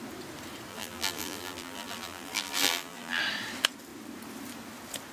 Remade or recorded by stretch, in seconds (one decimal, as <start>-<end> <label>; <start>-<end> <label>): 0.0-0.7 recorded; 0.7-3.2 remade; 3.2-5.1 recorded